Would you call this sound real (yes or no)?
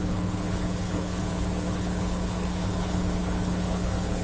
no